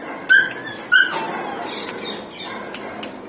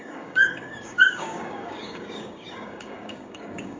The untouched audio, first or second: first